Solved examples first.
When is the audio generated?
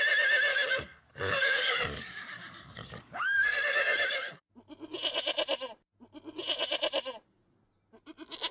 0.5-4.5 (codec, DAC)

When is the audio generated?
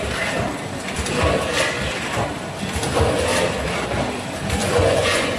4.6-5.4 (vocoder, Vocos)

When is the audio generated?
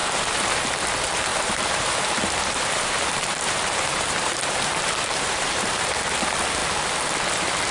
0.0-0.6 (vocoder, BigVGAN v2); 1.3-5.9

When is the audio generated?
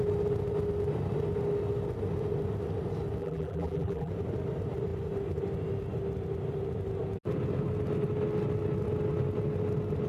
3.2-4.1 (vocoder, BigVGAN v2)